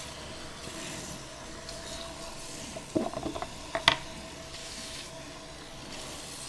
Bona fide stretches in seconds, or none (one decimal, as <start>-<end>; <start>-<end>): 0.0-4.6; 5.1-6.5